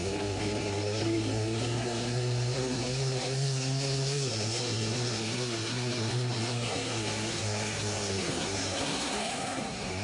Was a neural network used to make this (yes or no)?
yes